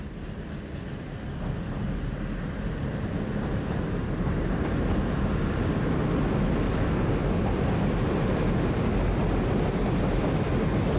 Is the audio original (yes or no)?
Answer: yes